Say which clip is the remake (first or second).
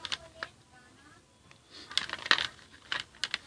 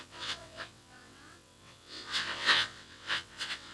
second